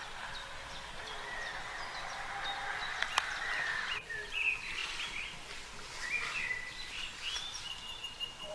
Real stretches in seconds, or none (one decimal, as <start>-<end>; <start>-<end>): 0.0-8.5